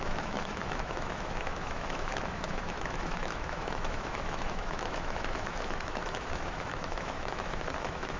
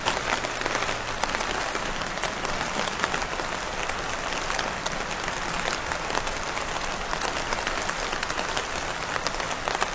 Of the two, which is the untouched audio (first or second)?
second